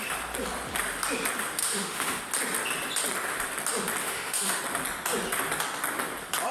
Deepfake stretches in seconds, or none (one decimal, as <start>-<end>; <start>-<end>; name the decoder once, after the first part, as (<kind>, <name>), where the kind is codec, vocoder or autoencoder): 1.6-2.2 (autoencoder, DAC-VAE); 4.0-4.6

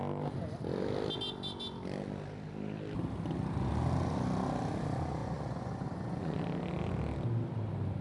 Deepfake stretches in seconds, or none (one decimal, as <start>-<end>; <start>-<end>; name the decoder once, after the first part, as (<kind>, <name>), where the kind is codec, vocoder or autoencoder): 5.2-6.4 (vocoder, Vocos)

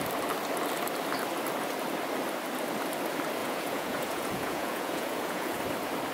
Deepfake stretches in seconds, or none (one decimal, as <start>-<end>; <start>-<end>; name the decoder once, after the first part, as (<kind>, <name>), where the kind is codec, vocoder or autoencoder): 3.4-5.6 (vocoder, Vocos)

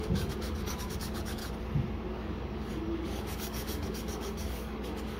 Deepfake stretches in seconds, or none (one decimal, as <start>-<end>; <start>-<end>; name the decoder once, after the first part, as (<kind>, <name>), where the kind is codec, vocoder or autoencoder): 0.0-1.4 (codec, DAC); 2.1-5.2

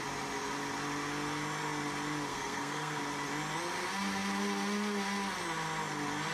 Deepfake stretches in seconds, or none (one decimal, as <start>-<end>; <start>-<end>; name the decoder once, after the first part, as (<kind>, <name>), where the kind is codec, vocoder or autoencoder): 2.3-3.0 (codec, SNAC)